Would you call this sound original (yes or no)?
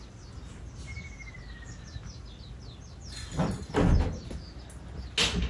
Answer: yes